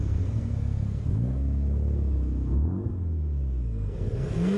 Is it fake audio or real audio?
fake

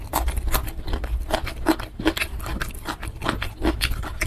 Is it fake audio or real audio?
real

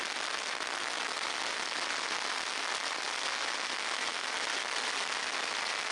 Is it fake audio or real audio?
real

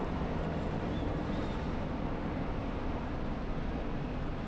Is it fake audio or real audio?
real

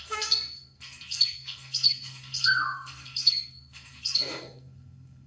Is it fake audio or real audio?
fake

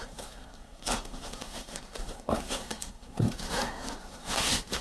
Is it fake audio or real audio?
fake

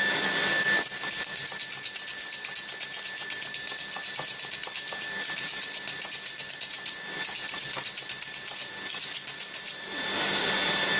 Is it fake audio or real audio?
real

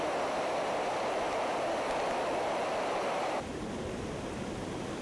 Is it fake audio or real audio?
real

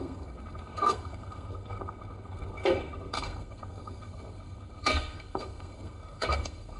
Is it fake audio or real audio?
fake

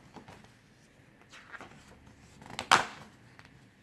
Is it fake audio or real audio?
real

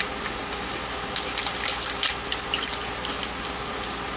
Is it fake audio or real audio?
real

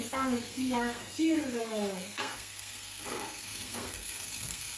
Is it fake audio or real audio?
fake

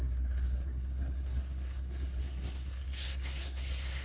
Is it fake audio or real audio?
fake